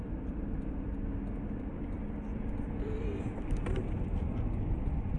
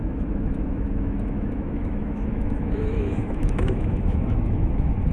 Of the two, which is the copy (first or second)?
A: second